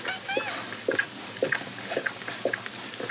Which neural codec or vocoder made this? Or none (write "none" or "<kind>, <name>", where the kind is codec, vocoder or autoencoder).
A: none